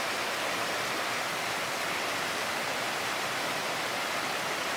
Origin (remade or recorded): recorded